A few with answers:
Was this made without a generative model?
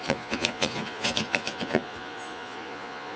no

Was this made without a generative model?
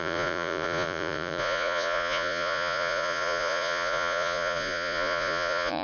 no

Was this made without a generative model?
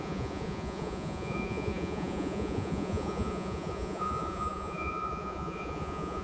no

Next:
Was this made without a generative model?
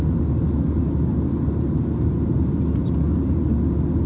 yes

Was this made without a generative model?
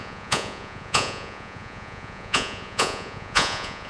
no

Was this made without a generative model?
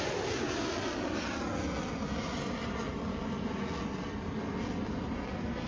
yes